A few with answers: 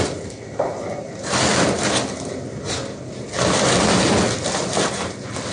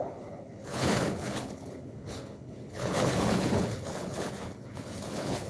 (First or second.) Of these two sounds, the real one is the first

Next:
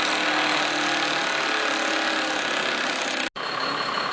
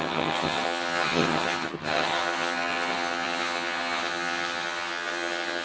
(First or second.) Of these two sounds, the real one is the first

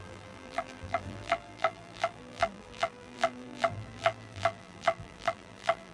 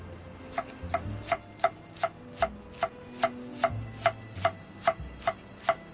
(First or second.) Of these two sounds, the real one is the second